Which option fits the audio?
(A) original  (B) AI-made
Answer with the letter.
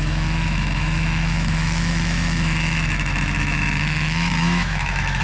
B